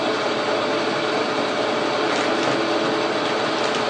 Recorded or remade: recorded